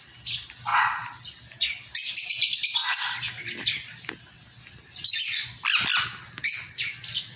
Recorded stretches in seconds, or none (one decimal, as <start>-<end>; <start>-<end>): 0.0-7.4